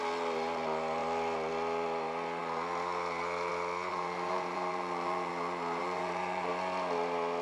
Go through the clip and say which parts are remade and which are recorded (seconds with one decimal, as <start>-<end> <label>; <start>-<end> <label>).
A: 0.0-3.9 recorded; 3.9-5.3 remade; 5.3-5.8 recorded; 5.8-6.5 remade; 6.5-7.4 recorded